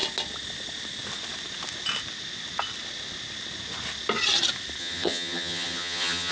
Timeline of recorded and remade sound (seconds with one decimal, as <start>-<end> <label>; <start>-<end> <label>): 0.0-4.8 recorded; 4.8-6.3 remade